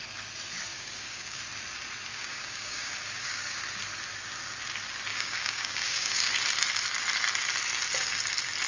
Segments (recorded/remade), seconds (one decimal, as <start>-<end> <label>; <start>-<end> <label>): 0.0-0.7 recorded; 0.7-1.4 remade; 1.4-2.1 recorded; 2.1-3.6 remade; 3.6-5.1 recorded; 5.1-6.3 remade; 6.3-8.7 recorded